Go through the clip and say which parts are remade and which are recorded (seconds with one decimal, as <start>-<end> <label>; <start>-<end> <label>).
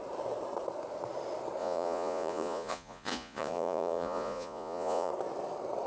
0.0-1.6 recorded; 1.6-5.1 remade; 5.1-5.9 recorded